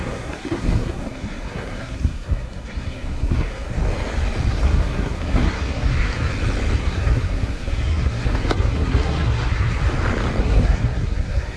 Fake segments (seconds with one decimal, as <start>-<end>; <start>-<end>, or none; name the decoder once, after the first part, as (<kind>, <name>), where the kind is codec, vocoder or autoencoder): 0.0-3.8 (codec, SNAC); 4.5-6.3; 6.8-9.8; 10.4-11.6